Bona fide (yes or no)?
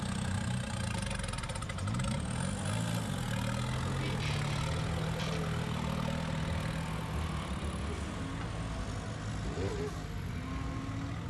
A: yes